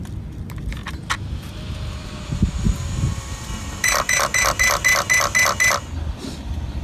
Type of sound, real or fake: real